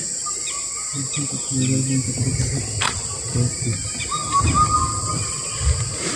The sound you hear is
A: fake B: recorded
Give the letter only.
B